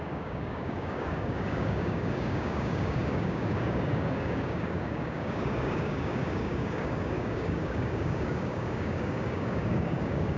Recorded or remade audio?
remade